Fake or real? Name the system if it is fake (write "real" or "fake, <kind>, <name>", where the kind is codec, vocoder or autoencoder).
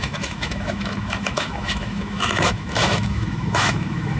fake, autoencoder, DAC-VAE